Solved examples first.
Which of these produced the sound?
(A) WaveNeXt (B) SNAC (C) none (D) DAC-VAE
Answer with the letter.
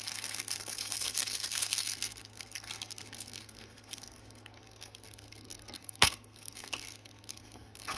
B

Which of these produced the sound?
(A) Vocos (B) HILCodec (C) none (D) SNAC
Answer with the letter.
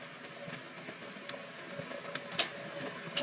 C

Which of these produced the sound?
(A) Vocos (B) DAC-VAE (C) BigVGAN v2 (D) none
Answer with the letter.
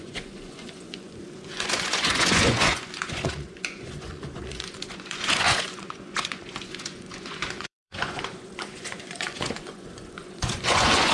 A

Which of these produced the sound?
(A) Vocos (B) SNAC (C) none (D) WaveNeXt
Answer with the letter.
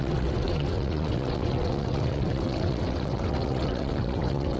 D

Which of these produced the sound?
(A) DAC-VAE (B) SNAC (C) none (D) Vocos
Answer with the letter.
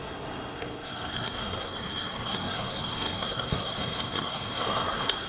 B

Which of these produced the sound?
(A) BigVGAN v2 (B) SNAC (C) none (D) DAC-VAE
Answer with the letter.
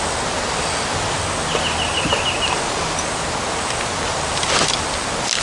C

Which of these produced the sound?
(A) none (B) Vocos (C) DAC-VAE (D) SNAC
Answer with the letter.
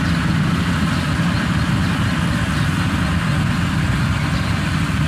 A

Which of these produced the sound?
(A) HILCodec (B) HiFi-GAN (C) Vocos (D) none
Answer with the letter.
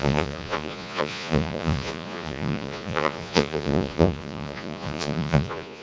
C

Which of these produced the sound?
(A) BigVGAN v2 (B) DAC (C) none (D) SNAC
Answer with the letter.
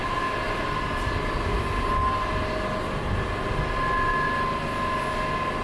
C